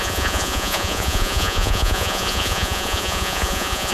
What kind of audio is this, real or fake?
fake